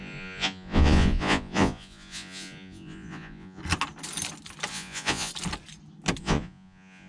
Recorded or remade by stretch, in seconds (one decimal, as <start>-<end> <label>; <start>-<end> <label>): 0.0-3.6 remade; 3.6-4.7 recorded; 4.7-5.3 remade; 5.3-6.2 recorded; 6.2-7.1 remade